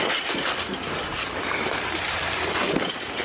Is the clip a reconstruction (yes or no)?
no